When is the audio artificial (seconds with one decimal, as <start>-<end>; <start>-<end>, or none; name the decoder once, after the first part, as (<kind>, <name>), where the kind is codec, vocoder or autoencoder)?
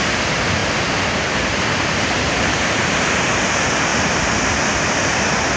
none